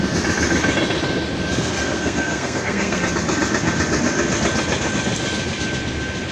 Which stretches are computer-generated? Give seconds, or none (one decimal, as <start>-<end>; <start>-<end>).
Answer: 1.5-3.0